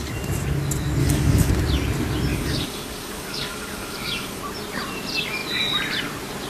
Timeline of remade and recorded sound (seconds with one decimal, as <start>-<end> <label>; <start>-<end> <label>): 0.0-1.0 recorded; 1.0-1.5 remade; 1.5-2.3 recorded; 2.3-4.4 remade; 4.4-6.5 recorded